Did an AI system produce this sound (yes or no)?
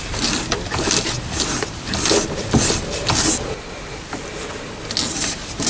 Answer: no